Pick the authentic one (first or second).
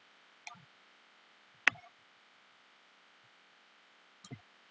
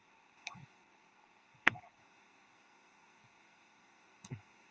first